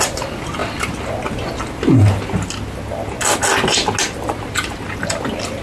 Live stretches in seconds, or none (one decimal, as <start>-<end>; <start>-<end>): 0.0-5.6

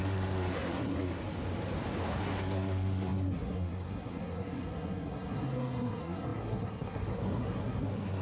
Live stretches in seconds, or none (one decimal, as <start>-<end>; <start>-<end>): 1.2-2.1

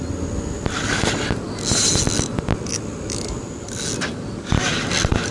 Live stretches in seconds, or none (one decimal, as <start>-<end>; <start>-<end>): 0.0-5.3

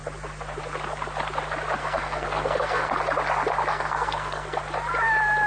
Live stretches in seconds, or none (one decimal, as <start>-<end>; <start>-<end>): 0.0-1.8; 2.9-3.7; 4.6-5.5

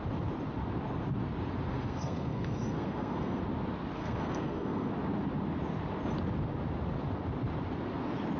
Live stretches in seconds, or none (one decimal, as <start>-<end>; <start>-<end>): 0.0-1.7; 3.4-4.0; 4.9-8.4

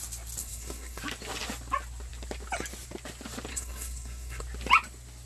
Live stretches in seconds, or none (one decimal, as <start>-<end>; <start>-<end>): 0.0-0.4; 1.0-3.5; 4.4-5.3

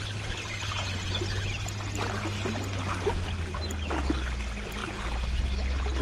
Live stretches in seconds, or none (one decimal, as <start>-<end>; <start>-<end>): 0.0-6.0